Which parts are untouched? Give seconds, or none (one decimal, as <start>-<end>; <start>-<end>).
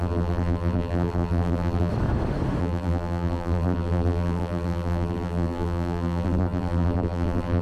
1.9-2.6